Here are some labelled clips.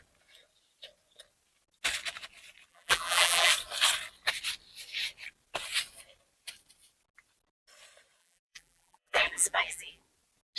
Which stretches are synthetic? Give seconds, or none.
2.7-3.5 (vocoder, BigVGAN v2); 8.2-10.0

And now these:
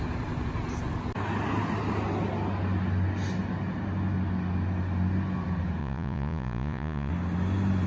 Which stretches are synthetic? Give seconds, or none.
5.8-7.1 (vocoder, Vocos)

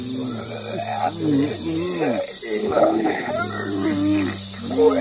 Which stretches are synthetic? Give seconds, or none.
2.6-3.3 (codec, HILCodec)

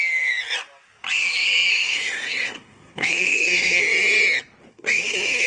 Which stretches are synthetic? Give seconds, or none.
1.7-3.8 (codec, SNAC); 4.7-5.5

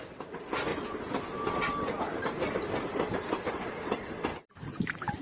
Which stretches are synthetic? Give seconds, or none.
0.7-2.4 (vocoder, BigVGAN v2); 4.3-5.2